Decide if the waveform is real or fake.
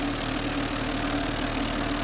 real